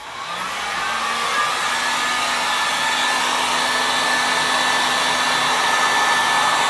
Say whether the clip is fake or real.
real